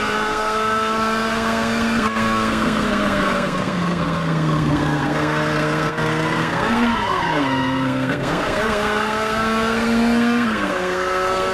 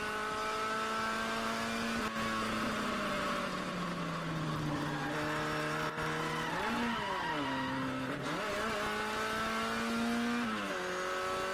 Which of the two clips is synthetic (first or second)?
first